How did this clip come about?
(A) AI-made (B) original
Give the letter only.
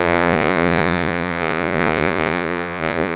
A